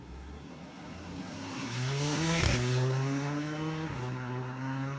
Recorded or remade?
remade